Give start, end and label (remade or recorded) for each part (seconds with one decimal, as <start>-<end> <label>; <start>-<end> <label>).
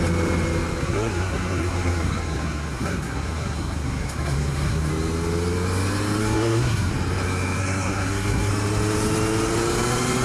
0.0-0.8 recorded; 0.8-4.9 remade; 4.9-6.2 recorded; 6.2-6.9 remade; 6.9-7.6 recorded; 7.6-8.5 remade; 8.5-10.2 recorded